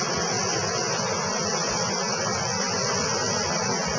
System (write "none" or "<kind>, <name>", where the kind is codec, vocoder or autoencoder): none